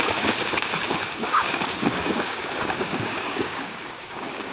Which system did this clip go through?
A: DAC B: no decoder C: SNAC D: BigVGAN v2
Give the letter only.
A